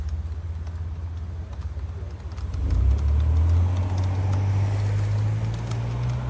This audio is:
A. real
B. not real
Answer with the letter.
A